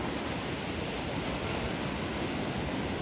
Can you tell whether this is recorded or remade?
recorded